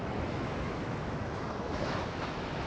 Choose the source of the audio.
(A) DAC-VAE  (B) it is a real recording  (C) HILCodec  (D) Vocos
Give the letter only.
A